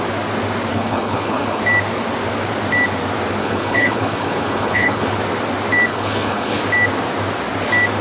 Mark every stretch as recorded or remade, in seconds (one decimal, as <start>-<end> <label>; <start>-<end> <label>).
0.0-0.7 recorded; 0.7-1.6 remade; 1.6-3.4 recorded; 3.4-5.2 remade; 5.2-5.9 recorded; 5.9-6.6 remade; 6.6-8.0 recorded